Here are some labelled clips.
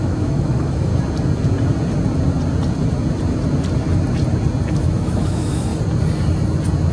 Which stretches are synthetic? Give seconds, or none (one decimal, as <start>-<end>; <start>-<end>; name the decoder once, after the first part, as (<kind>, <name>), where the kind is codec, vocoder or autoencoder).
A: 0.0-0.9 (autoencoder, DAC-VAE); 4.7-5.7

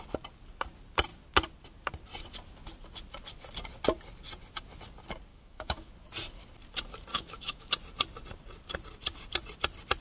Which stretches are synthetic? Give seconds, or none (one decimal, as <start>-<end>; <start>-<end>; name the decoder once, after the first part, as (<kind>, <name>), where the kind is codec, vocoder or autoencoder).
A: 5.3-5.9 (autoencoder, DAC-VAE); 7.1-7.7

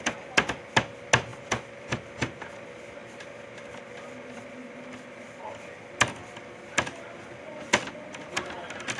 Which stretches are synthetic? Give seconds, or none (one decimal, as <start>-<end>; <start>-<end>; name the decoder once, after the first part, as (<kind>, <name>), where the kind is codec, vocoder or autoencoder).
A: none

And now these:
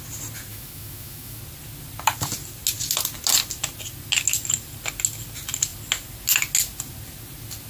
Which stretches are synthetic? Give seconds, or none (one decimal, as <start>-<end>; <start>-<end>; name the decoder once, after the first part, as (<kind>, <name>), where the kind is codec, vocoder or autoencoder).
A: 0.5-1.4 (autoencoder, DAC-VAE)

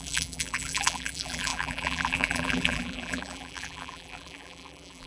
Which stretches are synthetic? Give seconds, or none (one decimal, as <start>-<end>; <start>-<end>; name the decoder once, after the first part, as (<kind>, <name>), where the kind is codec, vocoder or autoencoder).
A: 0.0-5.1 (vocoder, BigVGAN v2)

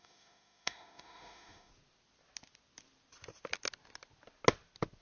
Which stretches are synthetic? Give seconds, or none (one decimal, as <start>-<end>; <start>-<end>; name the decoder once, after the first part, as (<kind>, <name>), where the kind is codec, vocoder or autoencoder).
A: 0.0-1.7 (autoencoder, DAC-VAE)

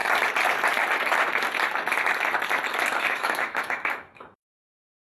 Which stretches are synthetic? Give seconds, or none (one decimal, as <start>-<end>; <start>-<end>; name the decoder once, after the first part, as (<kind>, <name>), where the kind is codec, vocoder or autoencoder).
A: 3.0-5.0 (autoencoder, DAC-VAE)